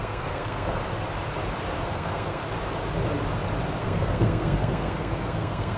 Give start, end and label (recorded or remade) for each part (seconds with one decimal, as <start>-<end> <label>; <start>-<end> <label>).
0.0-0.8 remade; 0.8-1.8 recorded; 1.8-2.4 remade; 2.4-3.8 recorded; 3.8-5.8 remade